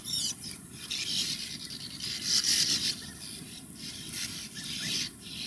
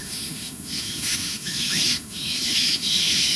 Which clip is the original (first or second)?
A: first